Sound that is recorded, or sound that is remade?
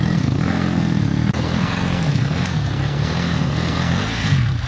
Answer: remade